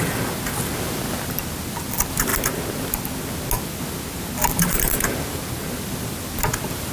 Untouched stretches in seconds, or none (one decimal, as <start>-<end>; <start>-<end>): 0.0-6.9